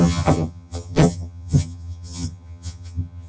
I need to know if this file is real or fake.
fake